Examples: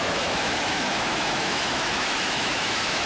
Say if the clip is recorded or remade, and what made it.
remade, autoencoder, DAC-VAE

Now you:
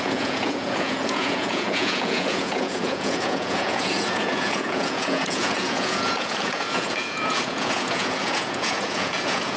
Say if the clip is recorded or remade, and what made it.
remade, vocoder, Vocos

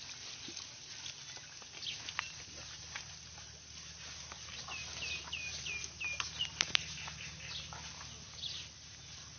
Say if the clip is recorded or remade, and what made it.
recorded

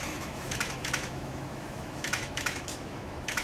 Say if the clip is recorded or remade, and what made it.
remade, autoencoder, DAC-VAE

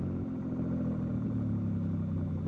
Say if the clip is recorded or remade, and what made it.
recorded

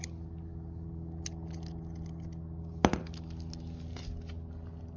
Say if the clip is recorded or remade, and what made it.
recorded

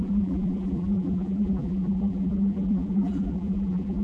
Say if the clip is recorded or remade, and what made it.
remade, vocoder, BigVGAN v2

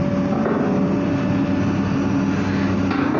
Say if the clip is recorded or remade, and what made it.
recorded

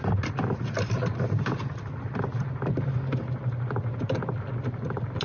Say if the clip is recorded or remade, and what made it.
remade, vocoder, BigVGAN v2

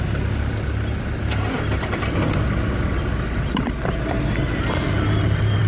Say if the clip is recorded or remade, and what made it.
recorded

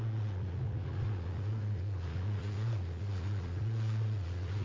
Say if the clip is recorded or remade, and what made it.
remade, vocoder, Vocos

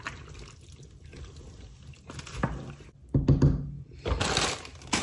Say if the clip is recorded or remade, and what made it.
recorded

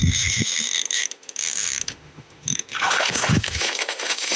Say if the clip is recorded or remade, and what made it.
remade, autoencoder, DAC-VAE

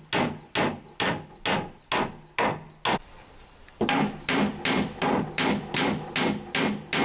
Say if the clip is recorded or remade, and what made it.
recorded